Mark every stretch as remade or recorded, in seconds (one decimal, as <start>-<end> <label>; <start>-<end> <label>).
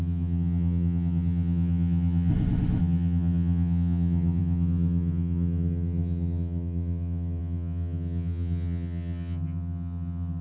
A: 0.0-2.3 remade; 2.3-2.8 recorded; 2.8-10.4 remade